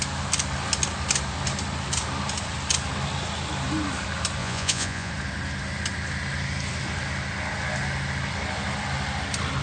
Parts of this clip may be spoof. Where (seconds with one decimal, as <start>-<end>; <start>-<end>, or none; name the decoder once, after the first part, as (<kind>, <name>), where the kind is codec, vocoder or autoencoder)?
4.4-5.1 (vocoder, Vocos)